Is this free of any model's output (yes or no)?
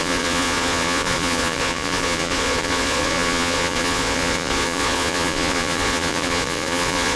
no